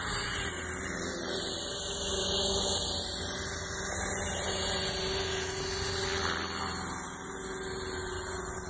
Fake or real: real